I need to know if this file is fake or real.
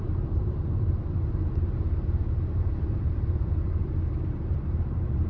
fake